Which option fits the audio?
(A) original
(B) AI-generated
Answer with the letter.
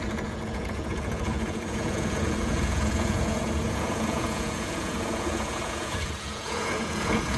B